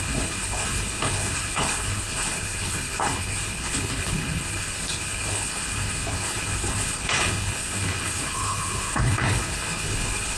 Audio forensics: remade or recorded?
remade